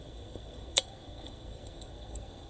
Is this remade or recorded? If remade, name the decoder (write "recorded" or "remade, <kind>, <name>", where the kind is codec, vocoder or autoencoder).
remade, codec, SNAC